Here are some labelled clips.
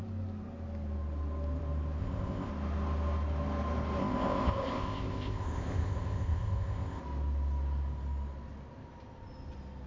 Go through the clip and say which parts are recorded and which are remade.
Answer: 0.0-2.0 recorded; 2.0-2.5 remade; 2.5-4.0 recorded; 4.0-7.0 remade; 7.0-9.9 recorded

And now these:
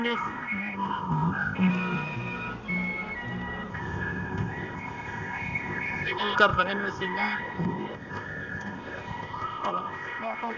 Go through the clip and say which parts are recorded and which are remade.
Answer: 0.0-1.7 remade; 1.7-3.7 recorded; 3.7-10.6 remade